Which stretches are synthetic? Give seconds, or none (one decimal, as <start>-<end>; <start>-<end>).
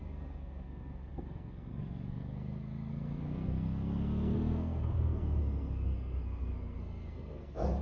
0.0-7.8